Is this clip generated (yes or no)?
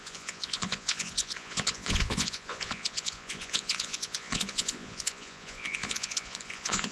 yes